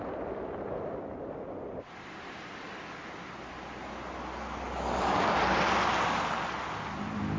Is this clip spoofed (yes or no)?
no